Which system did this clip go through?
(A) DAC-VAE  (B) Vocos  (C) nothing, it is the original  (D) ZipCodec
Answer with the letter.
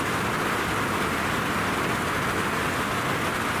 C